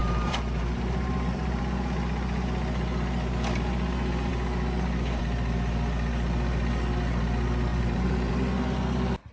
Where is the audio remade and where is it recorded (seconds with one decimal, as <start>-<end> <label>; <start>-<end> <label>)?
0.0-1.6 remade; 1.6-7.7 recorded; 7.7-8.3 remade; 8.3-9.3 recorded